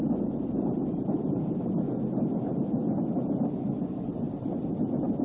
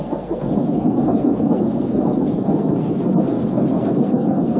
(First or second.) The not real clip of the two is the second